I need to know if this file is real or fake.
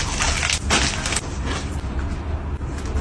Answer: real